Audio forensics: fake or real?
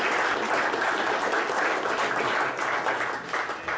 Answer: real